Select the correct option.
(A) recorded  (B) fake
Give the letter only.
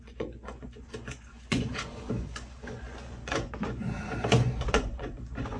B